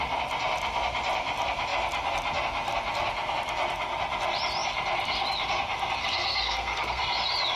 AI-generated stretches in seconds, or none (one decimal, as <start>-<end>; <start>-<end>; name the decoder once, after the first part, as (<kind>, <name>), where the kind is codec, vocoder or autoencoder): 6.0-7.0 (codec, SNAC)

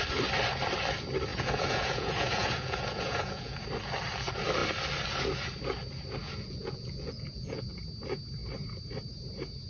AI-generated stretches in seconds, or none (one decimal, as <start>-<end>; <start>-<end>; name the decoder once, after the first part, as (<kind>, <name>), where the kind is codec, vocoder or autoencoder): 1.3-3.6 (vocoder, Vocos); 6.2-7.7

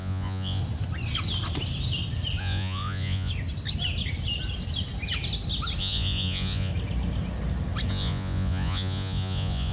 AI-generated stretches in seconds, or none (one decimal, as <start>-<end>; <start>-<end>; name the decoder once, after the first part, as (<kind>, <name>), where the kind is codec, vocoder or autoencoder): 0.0-0.6 (vocoder, Vocos); 2.4-3.3; 5.8-6.7; 7.9-9.7

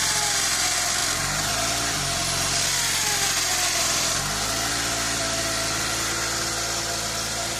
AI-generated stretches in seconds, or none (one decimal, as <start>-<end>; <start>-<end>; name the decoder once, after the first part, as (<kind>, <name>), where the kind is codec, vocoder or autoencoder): none

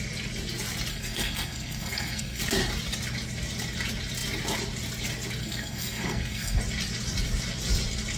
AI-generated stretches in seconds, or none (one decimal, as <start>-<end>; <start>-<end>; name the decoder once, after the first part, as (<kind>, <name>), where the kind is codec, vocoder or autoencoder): 0.9-2.4 (codec, SNAC); 5.4-6.6

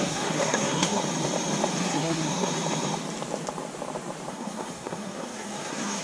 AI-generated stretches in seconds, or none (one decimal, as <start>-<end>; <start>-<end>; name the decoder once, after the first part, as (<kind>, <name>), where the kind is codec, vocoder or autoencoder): 0.0-1.0 (codec, SNAC); 1.8-2.5; 4.3-6.0

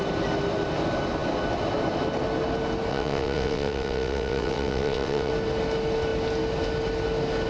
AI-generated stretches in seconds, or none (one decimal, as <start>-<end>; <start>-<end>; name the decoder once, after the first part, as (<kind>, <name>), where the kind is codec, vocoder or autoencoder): 2.9-5.3 (vocoder, WaveNeXt)